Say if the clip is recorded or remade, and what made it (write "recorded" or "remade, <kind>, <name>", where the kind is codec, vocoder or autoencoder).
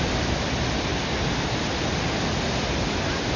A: recorded